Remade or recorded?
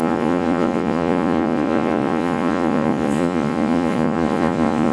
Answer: remade